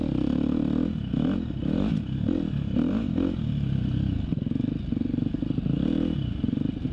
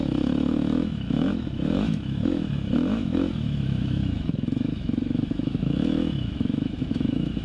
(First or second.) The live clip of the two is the first